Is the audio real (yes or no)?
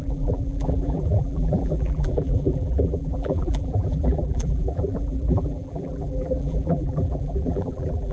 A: no